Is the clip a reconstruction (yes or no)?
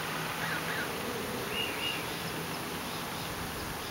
no